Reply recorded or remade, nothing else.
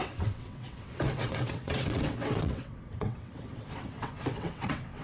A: remade